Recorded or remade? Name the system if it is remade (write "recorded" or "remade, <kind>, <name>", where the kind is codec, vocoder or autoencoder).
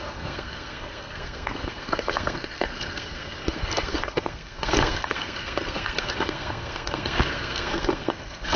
remade, codec, SNAC